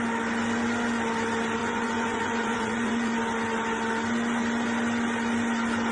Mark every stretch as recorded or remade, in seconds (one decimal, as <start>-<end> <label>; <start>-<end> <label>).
0.0-1.6 recorded; 1.6-3.1 remade; 3.1-5.9 recorded